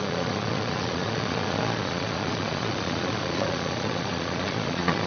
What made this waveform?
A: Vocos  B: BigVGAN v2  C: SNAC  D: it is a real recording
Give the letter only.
A